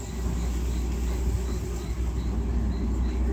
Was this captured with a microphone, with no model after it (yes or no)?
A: yes